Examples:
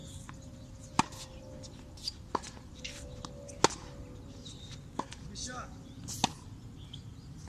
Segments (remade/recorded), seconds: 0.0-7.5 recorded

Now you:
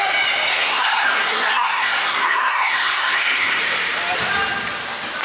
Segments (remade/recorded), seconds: 0.0-0.5 recorded; 0.5-3.6 remade; 3.6-5.2 recorded

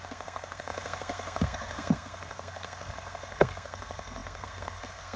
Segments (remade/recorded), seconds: 0.0-5.2 remade

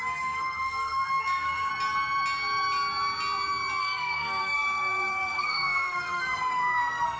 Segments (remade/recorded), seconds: 0.0-1.7 remade; 1.7-3.8 recorded; 3.8-7.2 remade